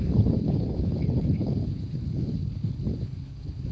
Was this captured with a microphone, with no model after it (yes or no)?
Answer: no